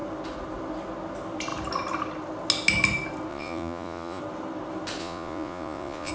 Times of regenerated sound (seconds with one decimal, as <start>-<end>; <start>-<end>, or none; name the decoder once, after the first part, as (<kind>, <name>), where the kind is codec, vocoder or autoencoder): 3.3-4.2 (vocoder, Vocos); 5.0-6.1